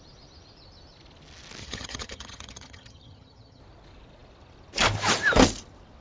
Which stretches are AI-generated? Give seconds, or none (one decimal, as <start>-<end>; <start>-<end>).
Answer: 1.6-3.6